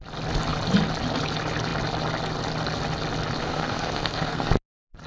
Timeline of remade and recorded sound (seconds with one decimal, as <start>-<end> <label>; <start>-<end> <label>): 0.0-3.4 recorded; 3.4-4.5 remade; 4.5-5.1 recorded